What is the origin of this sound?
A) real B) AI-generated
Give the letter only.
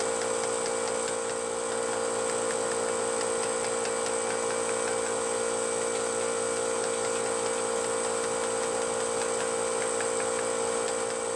A